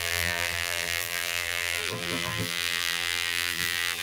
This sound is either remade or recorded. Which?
remade